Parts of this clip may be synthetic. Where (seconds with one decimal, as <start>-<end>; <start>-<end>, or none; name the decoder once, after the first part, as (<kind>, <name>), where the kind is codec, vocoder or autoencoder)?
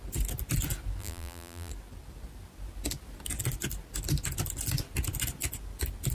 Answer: 1.0-1.7 (vocoder, BigVGAN v2)